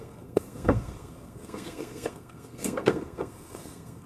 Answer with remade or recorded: remade